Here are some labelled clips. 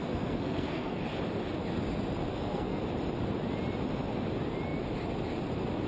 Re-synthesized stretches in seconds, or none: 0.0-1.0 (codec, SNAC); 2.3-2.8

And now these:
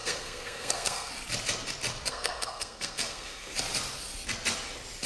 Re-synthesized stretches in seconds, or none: 0.0-1.1 (codec, SNAC); 2.1-3.5

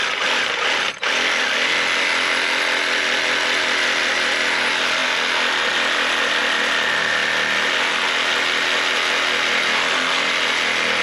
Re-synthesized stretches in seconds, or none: none

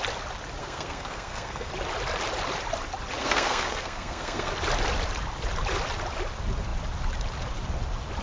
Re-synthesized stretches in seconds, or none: 0.6-1.7 (codec, SNAC); 3.2-4.5

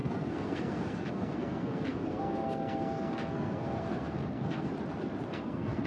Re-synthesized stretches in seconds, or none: 0.0-4.7 (codec, SNAC); 5.3-5.9

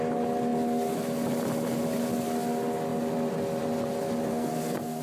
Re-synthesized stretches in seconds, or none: 4.3-5.0 (codec, SNAC)

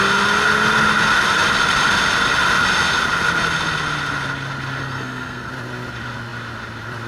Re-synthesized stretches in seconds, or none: 4.8-5.5 (codec, SNAC)

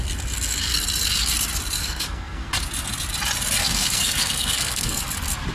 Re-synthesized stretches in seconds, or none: 1.8-2.5 (codec, SNAC); 3.6-5.0